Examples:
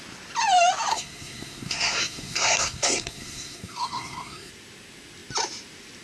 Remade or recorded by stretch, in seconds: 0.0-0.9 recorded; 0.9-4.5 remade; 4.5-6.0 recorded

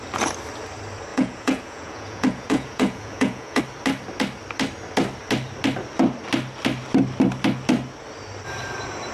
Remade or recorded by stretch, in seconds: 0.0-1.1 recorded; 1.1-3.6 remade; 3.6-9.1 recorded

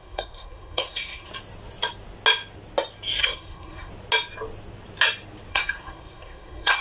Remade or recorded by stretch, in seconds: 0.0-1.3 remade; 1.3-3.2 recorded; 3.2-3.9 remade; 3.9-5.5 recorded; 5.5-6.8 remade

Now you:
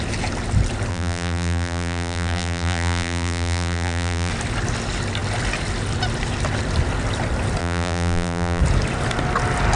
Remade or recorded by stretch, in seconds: 0.0-0.9 recorded; 0.9-4.3 remade; 4.3-7.6 recorded; 7.6-8.6 remade; 8.6-9.8 recorded